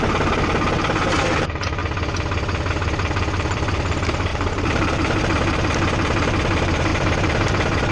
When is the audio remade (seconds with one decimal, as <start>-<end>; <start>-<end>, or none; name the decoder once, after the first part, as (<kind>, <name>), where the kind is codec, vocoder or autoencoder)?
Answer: 0.0-1.8 (vocoder, BigVGAN v2); 2.7-7.9